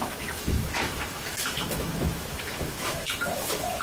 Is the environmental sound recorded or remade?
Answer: remade